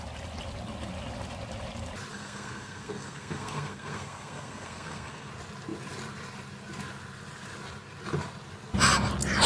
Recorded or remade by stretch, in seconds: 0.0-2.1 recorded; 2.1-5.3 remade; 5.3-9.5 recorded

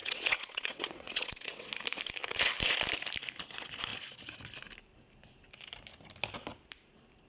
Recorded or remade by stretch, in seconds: 0.0-1.7 remade; 1.7-7.3 recorded

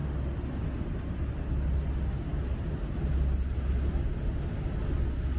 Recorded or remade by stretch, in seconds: 0.0-5.4 recorded

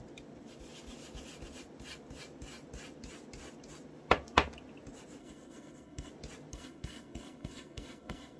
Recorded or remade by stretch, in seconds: 0.0-5.2 recorded; 5.2-6.1 remade; 6.1-6.5 recorded; 6.5-8.4 remade